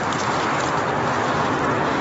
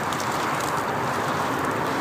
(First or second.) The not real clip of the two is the second